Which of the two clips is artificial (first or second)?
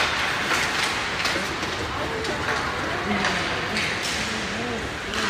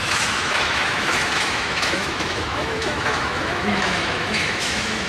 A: second